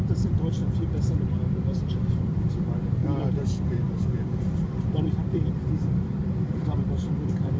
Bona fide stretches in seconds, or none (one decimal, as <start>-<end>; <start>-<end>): 0.6-2.0